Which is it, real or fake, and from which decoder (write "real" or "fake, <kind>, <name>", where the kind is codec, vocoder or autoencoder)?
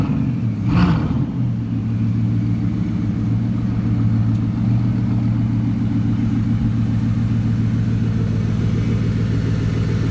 real